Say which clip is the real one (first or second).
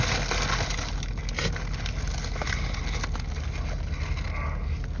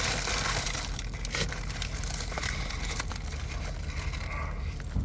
first